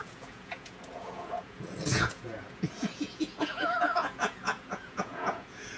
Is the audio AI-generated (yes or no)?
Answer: yes